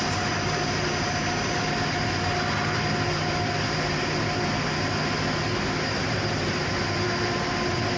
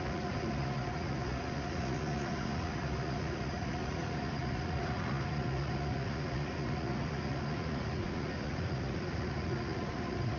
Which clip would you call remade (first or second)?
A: second